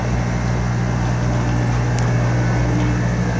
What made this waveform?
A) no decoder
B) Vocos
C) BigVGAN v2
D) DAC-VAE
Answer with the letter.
A